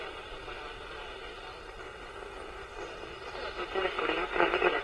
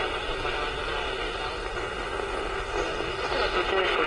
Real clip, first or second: second